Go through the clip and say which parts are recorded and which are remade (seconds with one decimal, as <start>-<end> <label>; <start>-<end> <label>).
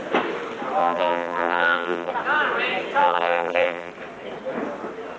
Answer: 0.0-0.8 recorded; 0.8-2.1 remade; 2.1-3.0 recorded; 3.0-3.9 remade; 3.9-5.2 recorded